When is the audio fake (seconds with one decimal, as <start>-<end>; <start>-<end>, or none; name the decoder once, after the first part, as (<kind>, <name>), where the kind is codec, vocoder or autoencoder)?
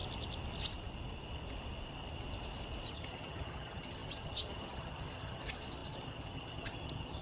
2.9-7.2 (vocoder, HiFi-GAN)